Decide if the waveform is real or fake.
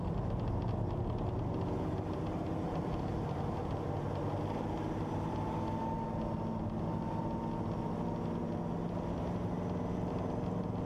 real